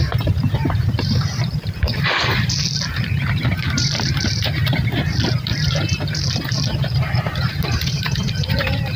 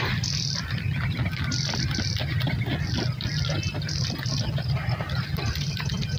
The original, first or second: second